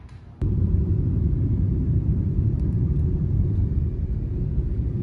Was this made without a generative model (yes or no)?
no